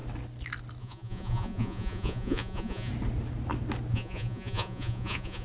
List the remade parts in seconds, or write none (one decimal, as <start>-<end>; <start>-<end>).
0.8-2.9; 3.9-5.4